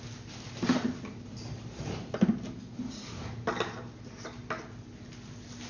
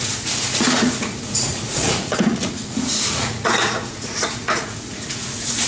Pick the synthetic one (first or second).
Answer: second